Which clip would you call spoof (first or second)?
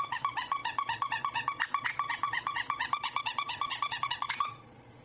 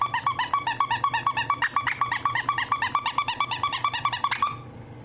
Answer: first